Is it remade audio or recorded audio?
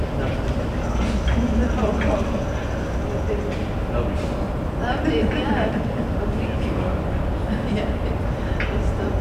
recorded